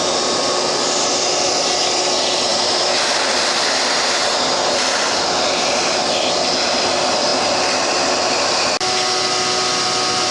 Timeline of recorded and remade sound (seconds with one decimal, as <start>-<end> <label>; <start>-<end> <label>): 0.0-10.3 recorded